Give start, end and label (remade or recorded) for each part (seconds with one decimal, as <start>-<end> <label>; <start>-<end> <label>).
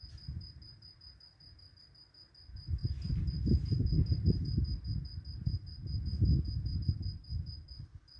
0.0-8.2 recorded